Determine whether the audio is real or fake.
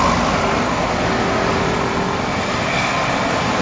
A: real